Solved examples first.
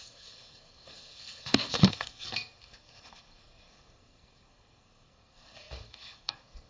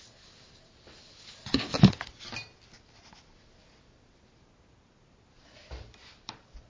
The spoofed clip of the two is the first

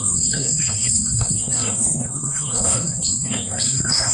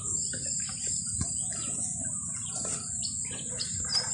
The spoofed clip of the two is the first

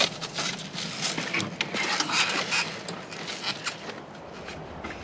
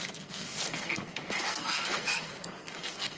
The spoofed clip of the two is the second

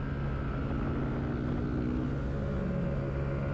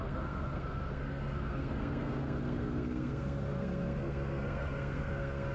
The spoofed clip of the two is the second